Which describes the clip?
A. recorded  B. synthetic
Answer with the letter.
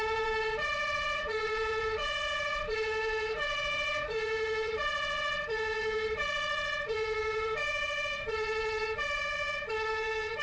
B